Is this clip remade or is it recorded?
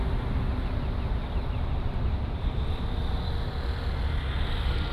recorded